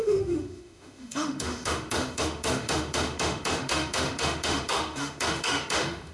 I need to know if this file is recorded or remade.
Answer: remade